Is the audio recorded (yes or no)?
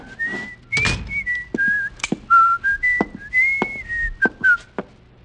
yes